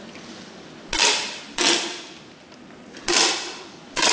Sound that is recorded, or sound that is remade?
recorded